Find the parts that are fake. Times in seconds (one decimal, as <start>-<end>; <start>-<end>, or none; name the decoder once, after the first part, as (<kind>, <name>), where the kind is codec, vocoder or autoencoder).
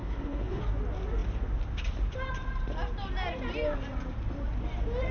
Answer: 0.0-0.6 (codec, HILCodec)